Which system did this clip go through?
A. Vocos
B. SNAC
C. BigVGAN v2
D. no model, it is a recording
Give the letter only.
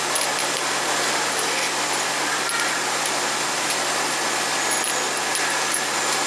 D